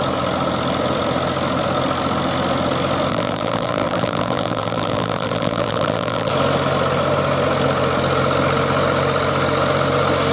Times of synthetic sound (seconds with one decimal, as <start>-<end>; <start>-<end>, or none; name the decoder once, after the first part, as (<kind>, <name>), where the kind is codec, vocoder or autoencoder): 3.1-6.3 (vocoder, BigVGAN v2)